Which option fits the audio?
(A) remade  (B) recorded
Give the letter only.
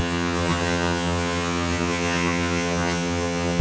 A